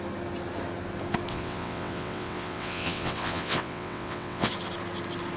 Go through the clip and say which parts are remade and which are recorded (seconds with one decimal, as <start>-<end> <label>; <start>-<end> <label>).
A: 0.0-1.3 recorded; 1.3-4.5 remade; 4.5-5.4 recorded